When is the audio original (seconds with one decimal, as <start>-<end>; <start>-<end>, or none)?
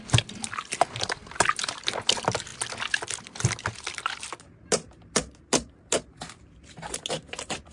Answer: 0.0-7.7